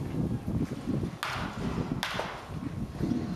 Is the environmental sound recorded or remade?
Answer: recorded